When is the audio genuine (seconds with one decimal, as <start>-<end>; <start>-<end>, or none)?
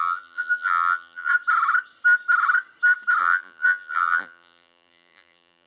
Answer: 1.3-3.2